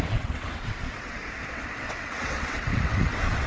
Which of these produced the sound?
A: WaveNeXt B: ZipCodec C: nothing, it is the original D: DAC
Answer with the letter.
A